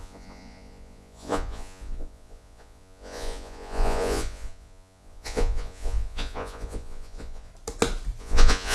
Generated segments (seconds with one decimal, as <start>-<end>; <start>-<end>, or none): 0.0-7.5; 8.2-8.7